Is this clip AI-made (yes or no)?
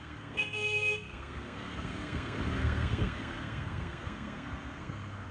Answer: yes